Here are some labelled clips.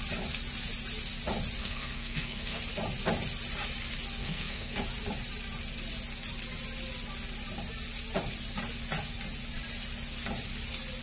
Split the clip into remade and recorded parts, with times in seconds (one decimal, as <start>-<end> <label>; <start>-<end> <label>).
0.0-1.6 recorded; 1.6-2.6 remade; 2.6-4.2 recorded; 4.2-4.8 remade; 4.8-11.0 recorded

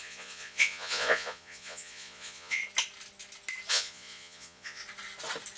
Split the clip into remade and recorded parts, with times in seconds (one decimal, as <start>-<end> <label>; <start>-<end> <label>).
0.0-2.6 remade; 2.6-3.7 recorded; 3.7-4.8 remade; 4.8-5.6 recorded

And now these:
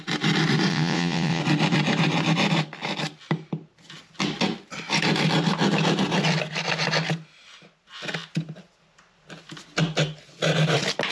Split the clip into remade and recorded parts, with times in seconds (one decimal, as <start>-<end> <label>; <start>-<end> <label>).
0.0-0.7 recorded; 0.7-1.4 remade; 1.4-11.1 recorded

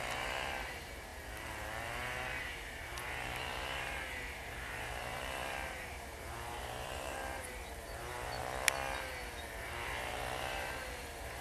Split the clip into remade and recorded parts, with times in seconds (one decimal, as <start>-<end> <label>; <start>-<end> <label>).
0.0-8.4 remade; 8.4-9.6 recorded; 9.6-11.4 remade